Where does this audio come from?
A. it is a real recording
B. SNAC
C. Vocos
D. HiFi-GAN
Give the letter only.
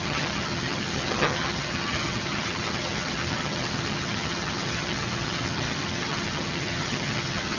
D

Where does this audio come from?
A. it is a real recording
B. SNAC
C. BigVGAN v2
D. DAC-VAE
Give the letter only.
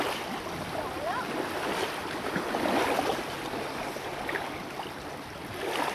A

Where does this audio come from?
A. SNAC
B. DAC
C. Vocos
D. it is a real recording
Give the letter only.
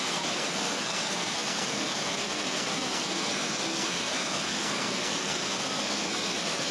A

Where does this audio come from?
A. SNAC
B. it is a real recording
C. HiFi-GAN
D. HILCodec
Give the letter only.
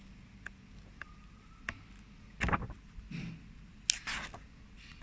B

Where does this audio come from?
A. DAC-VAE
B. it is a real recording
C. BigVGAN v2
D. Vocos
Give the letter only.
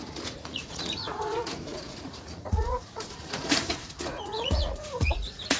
D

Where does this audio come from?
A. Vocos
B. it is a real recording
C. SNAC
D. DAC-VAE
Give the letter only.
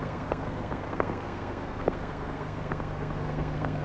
C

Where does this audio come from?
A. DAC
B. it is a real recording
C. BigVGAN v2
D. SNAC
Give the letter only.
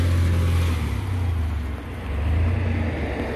B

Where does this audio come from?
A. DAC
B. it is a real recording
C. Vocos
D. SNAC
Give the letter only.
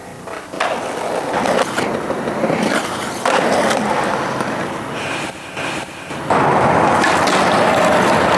B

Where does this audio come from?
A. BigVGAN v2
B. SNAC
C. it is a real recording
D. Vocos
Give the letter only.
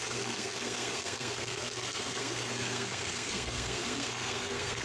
B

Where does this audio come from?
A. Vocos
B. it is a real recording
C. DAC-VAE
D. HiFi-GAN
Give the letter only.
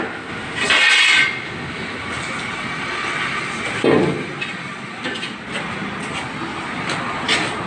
B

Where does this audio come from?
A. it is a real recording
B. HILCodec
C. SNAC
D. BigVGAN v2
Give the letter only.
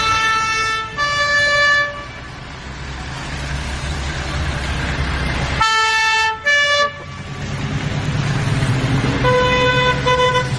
A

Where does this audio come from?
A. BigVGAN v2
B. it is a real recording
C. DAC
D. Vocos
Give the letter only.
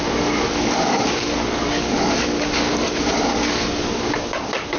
C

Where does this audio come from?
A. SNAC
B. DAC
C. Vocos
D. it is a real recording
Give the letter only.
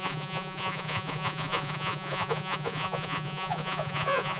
C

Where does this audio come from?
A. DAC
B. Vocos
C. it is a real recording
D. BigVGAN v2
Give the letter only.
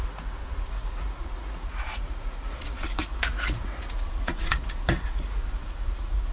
B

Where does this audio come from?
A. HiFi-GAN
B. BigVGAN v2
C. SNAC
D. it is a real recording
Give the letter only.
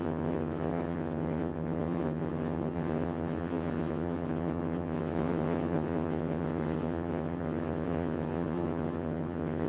A